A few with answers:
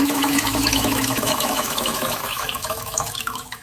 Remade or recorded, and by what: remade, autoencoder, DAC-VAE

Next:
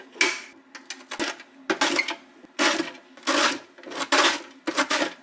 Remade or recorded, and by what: recorded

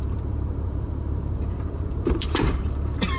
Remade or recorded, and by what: remade, vocoder, BigVGAN v2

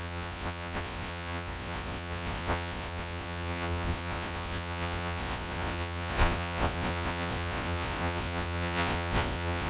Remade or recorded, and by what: remade, vocoder, Vocos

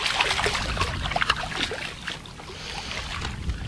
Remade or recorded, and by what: recorded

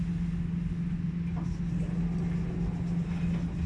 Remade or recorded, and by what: recorded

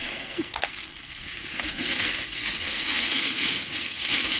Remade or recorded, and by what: remade, codec, SNAC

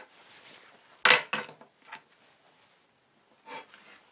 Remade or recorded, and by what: recorded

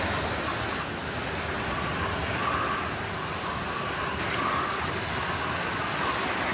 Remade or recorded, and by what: recorded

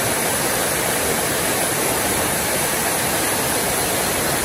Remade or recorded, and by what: recorded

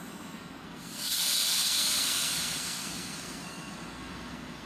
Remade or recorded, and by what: remade, codec, SNAC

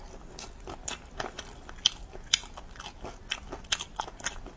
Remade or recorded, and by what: recorded